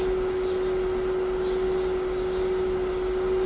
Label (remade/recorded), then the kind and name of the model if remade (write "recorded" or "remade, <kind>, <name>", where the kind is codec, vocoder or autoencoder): recorded